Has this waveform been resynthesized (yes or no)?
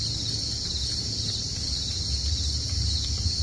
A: no